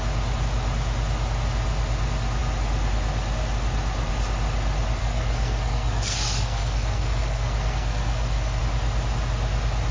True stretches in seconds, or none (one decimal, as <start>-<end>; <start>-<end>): 0.0-5.0; 8.6-9.9